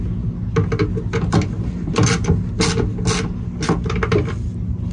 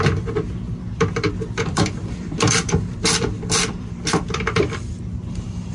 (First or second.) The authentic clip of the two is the first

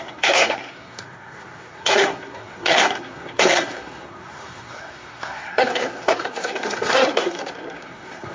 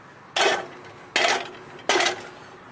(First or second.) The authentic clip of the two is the second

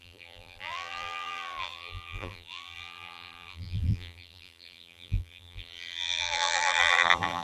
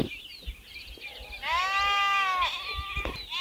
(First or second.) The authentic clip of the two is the second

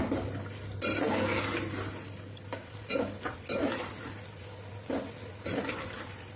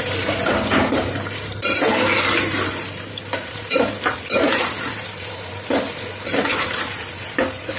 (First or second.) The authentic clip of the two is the first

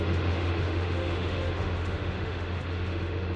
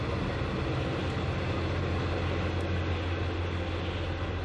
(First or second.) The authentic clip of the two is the second